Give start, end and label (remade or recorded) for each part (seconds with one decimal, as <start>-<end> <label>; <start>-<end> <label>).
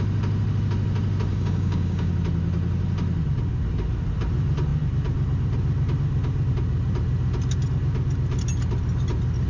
0.0-1.3 recorded; 1.3-2.1 remade; 2.1-9.5 recorded